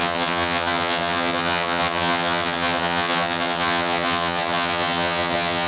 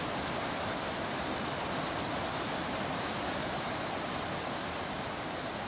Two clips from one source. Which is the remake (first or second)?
first